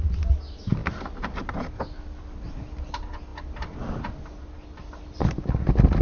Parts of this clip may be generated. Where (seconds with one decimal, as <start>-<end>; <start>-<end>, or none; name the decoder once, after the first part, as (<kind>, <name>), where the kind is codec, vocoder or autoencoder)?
none